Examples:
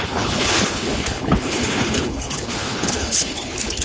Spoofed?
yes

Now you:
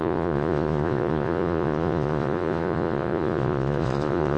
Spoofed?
yes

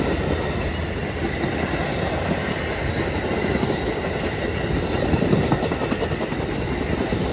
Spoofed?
no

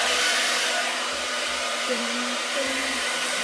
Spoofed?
yes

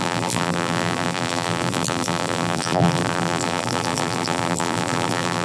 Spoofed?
yes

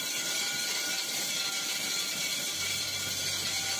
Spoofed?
no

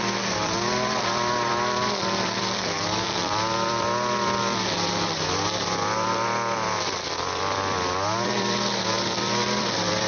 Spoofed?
yes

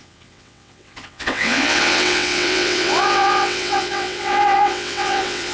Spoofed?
yes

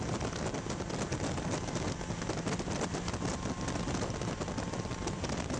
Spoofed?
no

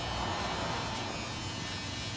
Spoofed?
no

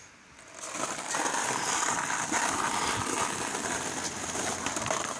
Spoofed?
no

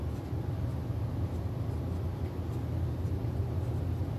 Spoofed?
no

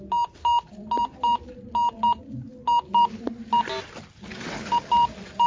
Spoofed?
no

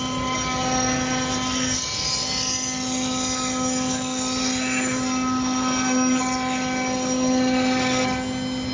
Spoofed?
no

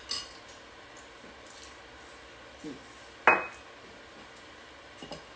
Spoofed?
no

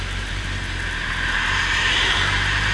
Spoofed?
no